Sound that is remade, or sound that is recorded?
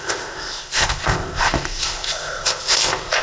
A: remade